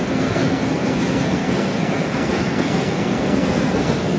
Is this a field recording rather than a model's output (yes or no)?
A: no